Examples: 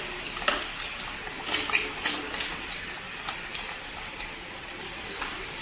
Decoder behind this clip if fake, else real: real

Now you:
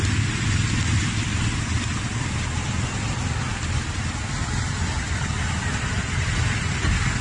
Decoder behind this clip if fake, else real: real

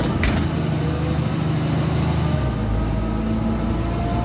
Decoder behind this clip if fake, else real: real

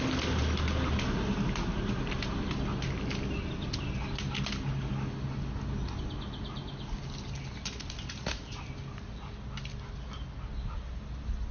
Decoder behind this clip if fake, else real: real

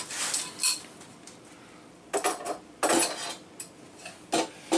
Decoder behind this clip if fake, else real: real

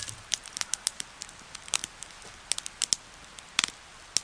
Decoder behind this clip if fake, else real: real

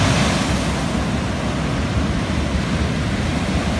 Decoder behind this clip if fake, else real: real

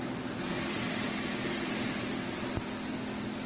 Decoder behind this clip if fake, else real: real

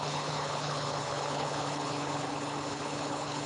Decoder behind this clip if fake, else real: fake, codec, HILCodec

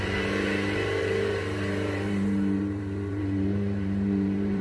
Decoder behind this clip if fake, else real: fake, vocoder, BigVGAN v2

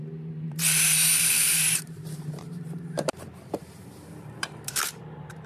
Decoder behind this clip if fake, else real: fake, vocoder, BigVGAN v2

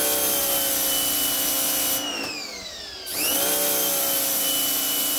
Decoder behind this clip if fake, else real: real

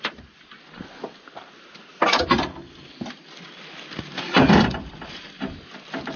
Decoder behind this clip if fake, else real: real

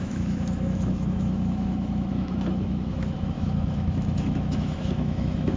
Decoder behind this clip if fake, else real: fake, autoencoder, DAC-VAE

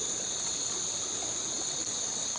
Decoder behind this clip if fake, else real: real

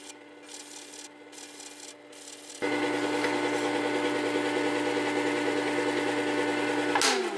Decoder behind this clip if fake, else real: real